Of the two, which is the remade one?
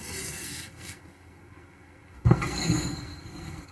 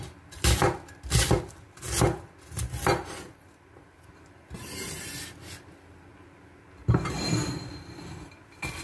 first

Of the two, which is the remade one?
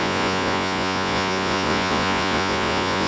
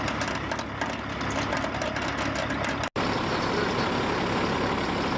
first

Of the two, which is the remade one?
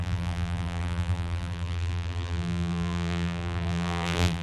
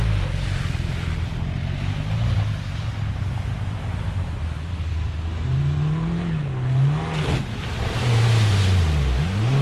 first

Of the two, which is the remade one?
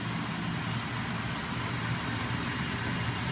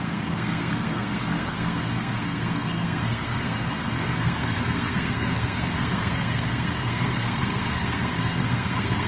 second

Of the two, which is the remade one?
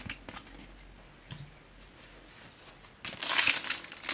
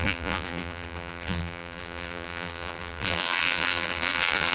second